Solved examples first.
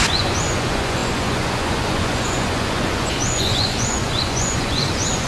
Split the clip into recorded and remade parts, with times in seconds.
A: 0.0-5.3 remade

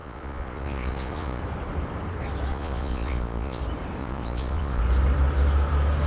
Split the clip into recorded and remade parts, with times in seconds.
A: 0.0-1.4 remade; 1.4-2.5 recorded; 2.5-3.6 remade; 3.6-4.0 recorded; 4.0-4.8 remade; 4.8-6.1 recorded